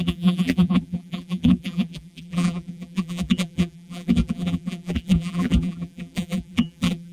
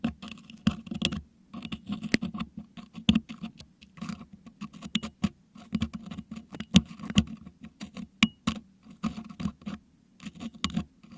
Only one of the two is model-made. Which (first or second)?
first